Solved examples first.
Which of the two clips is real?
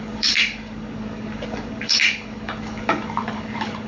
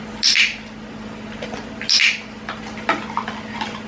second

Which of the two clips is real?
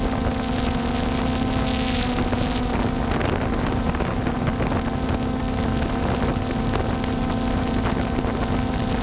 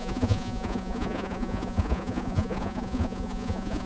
first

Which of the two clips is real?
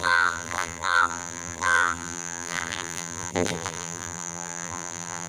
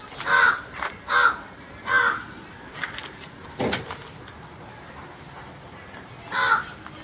second